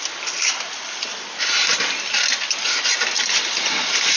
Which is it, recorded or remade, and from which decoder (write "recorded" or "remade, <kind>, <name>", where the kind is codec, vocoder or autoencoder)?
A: recorded